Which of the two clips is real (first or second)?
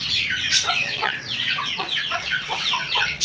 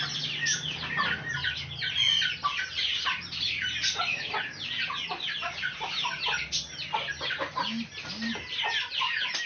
second